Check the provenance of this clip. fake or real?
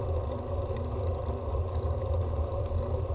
real